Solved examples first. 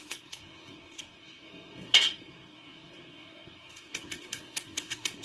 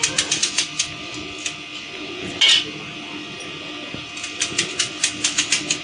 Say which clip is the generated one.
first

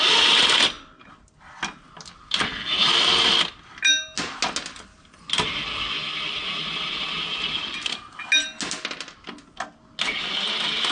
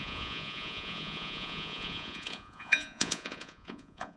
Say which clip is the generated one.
second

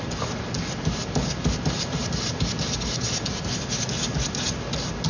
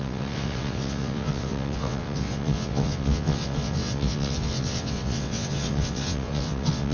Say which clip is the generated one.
second